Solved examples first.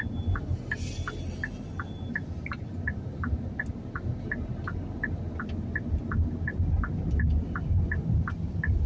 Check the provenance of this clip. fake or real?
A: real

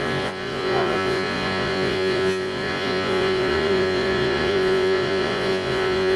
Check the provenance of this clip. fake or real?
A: fake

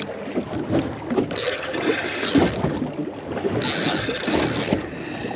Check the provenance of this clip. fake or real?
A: real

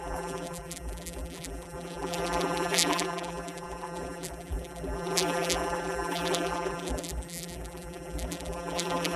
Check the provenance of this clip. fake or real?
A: fake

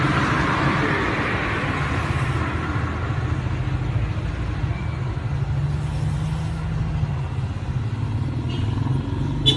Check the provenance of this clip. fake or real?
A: real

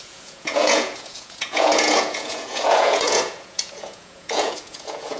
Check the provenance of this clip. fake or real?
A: fake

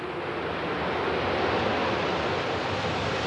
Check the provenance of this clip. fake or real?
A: real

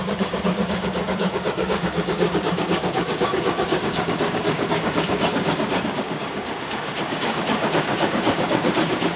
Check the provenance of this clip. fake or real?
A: fake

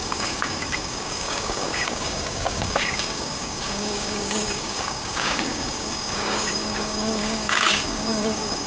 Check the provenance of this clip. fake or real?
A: fake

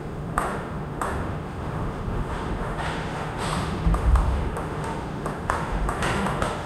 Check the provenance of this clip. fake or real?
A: fake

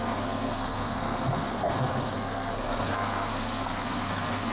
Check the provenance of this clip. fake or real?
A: fake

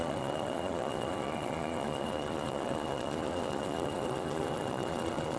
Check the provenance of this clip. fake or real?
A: fake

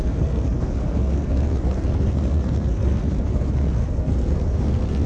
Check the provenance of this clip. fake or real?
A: fake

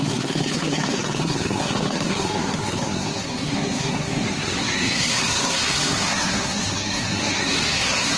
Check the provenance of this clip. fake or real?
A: fake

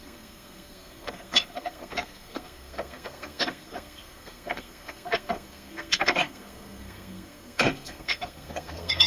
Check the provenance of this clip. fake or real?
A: fake